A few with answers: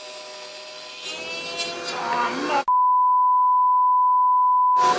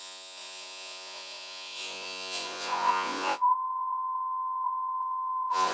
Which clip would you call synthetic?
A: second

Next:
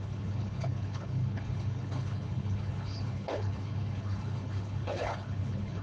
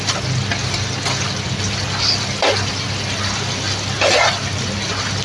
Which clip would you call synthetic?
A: first